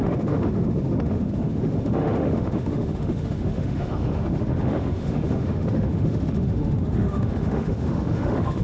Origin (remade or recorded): remade